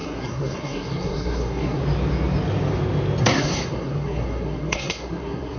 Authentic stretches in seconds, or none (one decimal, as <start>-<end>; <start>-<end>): 1.8-3.2